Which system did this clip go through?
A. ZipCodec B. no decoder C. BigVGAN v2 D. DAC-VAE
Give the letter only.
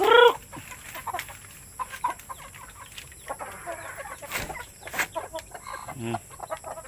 B